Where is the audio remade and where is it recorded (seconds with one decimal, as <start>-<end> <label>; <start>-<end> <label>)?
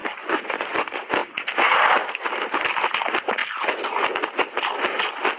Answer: 0.0-5.4 recorded